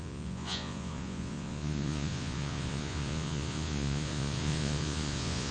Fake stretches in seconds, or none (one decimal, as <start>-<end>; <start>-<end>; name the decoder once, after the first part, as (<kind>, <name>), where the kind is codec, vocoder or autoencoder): 0.0-5.5 (vocoder, Vocos)